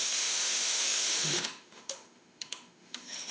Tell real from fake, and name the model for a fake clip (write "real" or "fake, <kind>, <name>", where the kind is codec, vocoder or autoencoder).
fake, autoencoder, DAC-VAE